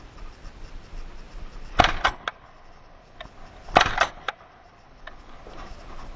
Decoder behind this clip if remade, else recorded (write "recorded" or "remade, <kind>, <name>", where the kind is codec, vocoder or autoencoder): recorded